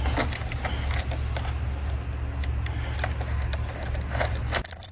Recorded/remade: recorded